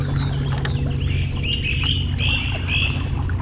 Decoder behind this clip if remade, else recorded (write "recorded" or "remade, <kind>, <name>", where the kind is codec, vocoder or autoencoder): recorded